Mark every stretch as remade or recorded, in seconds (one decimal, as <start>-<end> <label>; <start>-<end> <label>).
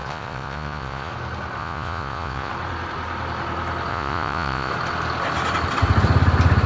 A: 0.0-1.1 remade; 1.1-1.6 recorded; 1.6-2.5 remade; 2.5-3.9 recorded; 3.9-4.7 remade; 4.7-6.7 recorded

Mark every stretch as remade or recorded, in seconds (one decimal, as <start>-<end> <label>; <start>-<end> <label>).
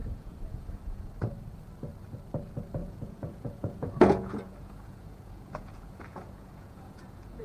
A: 0.0-1.1 remade; 1.1-2.8 recorded; 2.8-7.4 remade